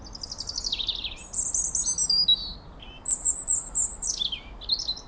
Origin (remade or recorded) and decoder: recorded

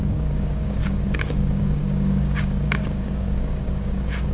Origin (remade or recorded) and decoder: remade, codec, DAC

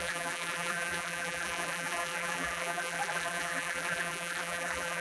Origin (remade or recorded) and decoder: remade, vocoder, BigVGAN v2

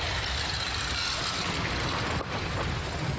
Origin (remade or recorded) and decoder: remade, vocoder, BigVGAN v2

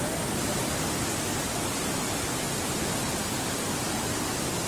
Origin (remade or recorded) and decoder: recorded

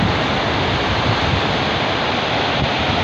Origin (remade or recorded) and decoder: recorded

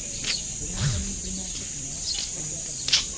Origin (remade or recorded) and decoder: recorded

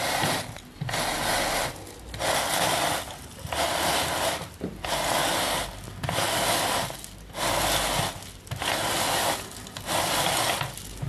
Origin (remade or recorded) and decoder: recorded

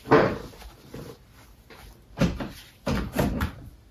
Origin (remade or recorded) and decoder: recorded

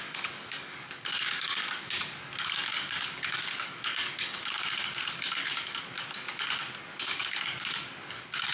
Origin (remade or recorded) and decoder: remade, codec, DAC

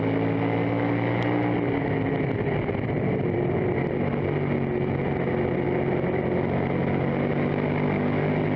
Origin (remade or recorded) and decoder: recorded